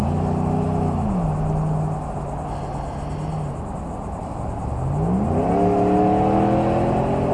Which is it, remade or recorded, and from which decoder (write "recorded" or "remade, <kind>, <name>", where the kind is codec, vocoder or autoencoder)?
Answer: recorded